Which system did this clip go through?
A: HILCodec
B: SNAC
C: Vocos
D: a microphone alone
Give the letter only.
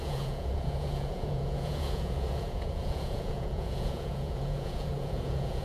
C